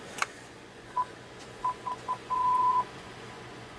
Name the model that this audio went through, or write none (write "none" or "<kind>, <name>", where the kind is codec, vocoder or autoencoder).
vocoder, Vocos